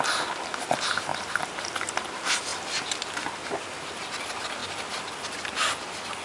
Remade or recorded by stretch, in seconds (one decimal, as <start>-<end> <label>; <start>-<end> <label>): 0.0-6.2 recorded